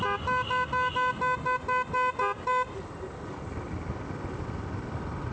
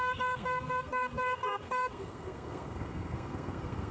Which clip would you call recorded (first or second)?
first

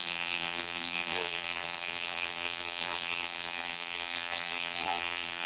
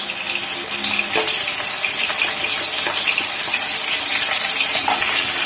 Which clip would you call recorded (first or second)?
second